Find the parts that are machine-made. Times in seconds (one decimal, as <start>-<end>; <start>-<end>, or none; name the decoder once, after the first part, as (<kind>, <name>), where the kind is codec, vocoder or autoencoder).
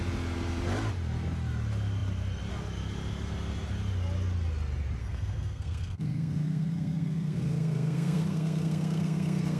5.0-9.6 (codec, SNAC)